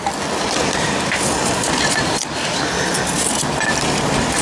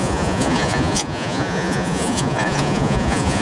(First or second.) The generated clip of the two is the second